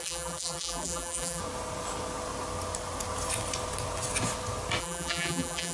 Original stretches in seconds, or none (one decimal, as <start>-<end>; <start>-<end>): 1.4-4.8